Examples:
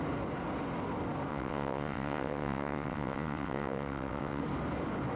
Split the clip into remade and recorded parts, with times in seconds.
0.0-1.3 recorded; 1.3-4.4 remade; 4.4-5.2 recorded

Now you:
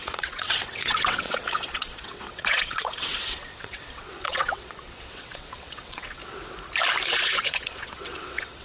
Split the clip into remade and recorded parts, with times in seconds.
0.0-6.2 remade; 6.2-7.1 recorded; 7.1-8.6 remade